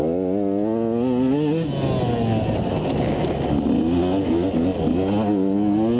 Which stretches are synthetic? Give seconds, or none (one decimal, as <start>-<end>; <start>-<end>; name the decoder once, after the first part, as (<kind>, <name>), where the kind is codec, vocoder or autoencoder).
none

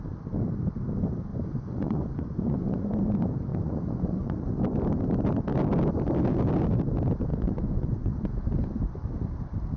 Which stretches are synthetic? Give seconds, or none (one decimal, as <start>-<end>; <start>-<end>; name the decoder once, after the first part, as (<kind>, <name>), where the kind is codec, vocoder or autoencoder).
1.3-2.9 (vocoder, Vocos); 3.5-4.5; 7.3-8.3

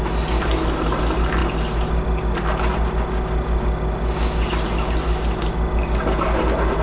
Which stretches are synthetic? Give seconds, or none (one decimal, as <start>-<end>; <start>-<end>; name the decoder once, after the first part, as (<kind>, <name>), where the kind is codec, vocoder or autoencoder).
none

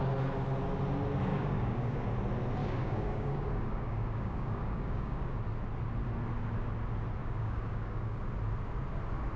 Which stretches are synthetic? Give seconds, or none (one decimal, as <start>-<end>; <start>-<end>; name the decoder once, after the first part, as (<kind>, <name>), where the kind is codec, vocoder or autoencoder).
1.3-2.1 (codec, DAC); 2.6-5.4; 7.2-8.2

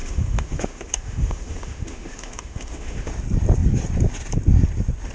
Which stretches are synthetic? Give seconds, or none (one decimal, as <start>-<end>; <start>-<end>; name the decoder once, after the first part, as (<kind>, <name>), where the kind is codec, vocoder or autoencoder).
0.0-3.1 (autoencoder, DAC-VAE)

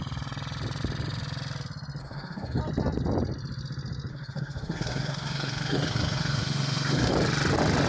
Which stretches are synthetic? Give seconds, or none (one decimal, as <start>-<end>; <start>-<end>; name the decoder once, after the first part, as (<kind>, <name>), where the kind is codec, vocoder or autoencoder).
2.0-2.6 (codec, SNAC); 4.1-7.1